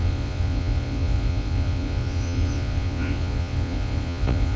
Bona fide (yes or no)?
no